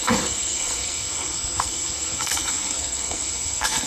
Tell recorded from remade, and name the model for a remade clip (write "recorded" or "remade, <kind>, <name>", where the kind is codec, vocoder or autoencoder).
remade, codec, SNAC